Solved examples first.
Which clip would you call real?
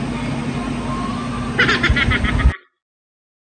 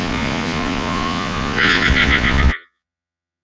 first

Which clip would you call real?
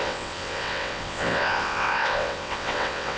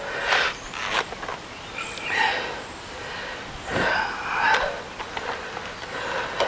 second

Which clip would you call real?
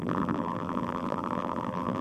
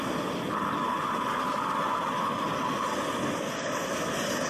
second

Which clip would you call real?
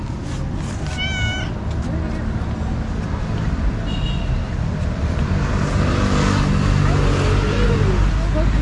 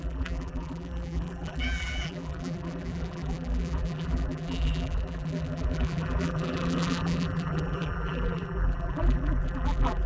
first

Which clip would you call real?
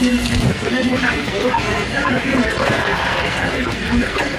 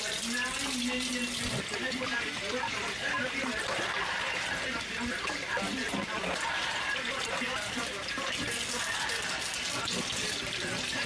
second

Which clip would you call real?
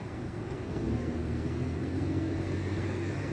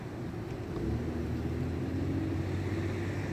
second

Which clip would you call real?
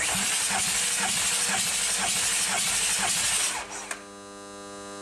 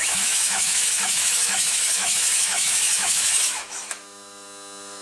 first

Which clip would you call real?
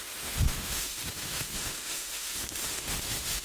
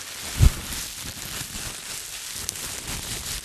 second